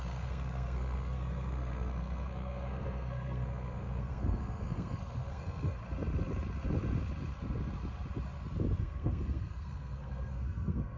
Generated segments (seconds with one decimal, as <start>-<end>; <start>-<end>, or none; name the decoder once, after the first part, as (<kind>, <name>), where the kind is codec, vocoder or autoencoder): 0.0-5.8 (codec, SNAC); 8.8-11.0